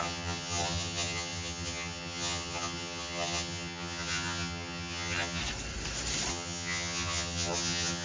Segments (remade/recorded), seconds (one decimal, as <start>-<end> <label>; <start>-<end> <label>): 0.0-5.4 remade; 5.4-6.3 recorded; 6.3-8.0 remade